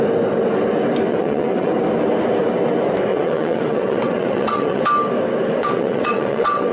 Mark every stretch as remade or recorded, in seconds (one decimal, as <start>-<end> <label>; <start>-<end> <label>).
0.0-1.1 recorded; 1.1-1.7 remade; 1.7-3.1 recorded; 3.1-4.8 remade; 4.8-5.6 recorded; 5.6-6.7 remade